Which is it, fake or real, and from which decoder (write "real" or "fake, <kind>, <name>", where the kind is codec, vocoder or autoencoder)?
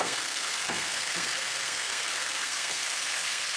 fake, codec, SNAC